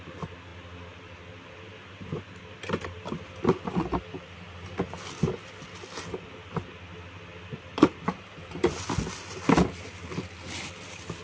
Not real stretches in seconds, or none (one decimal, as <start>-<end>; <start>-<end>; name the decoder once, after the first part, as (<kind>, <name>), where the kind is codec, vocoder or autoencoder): none